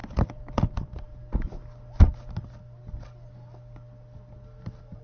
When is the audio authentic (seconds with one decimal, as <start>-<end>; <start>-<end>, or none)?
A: 0.0-5.0